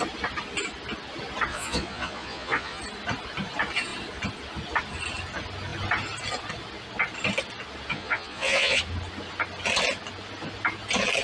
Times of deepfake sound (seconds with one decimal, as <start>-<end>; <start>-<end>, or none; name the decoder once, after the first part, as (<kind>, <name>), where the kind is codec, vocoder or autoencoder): 1.5-2.8 (vocoder, Vocos); 7.9-8.8